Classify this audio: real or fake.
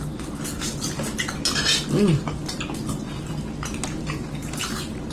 real